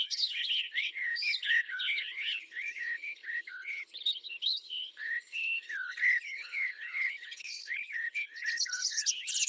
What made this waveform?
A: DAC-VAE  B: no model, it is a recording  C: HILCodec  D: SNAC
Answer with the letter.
C